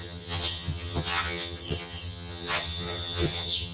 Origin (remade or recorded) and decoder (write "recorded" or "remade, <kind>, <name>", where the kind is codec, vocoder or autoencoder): remade, vocoder, HiFi-GAN